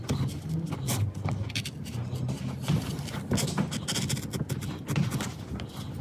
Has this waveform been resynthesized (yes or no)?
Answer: no